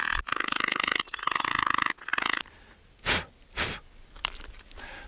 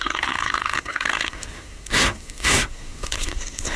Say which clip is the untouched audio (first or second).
first